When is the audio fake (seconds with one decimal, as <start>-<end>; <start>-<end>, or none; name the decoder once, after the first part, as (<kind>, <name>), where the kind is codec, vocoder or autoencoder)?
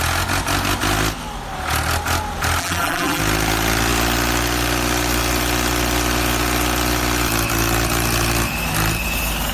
2.6-3.2 (vocoder, BigVGAN v2)